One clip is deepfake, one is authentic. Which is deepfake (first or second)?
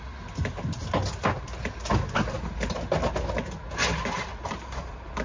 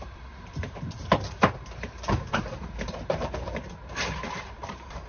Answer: second